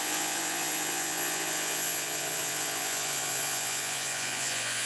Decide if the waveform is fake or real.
fake